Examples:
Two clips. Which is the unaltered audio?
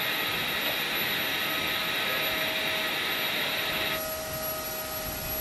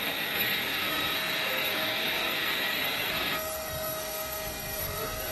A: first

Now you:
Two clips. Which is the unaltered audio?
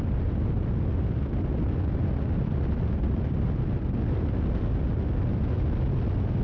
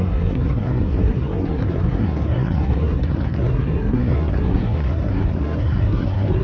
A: first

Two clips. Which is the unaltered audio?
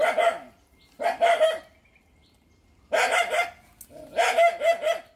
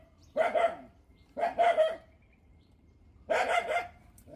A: first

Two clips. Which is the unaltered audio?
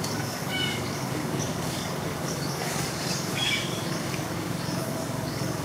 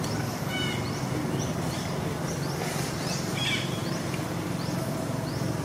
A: second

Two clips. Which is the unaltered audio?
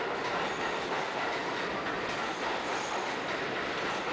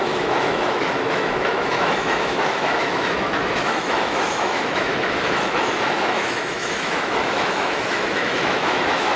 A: first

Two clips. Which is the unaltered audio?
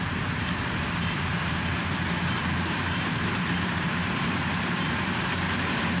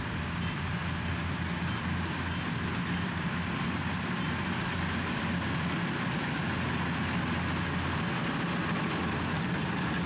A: second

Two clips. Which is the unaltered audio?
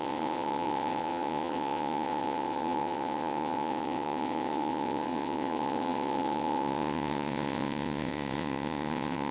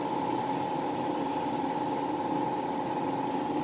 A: second